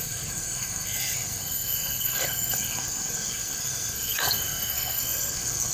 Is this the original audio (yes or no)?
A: no